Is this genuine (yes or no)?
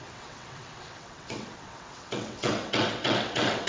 no